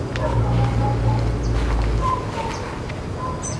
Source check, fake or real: real